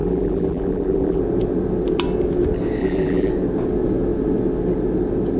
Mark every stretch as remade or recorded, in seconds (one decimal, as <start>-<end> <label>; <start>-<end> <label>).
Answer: 0.0-1.2 remade; 1.2-2.8 recorded; 2.8-3.3 remade; 3.3-5.4 recorded

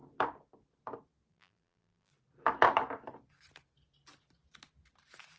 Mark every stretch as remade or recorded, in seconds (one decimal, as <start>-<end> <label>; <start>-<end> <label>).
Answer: 0.0-1.3 recorded; 1.3-2.1 remade; 2.1-5.4 recorded

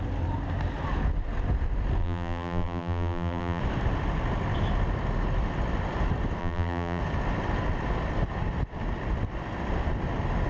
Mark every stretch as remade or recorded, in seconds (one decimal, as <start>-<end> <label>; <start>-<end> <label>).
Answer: 0.0-2.0 recorded; 2.0-3.6 remade; 3.6-6.4 recorded; 6.4-7.0 remade; 7.0-10.5 recorded